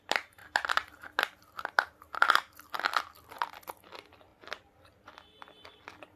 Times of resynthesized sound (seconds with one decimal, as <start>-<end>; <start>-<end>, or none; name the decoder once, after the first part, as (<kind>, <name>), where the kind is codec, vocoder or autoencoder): none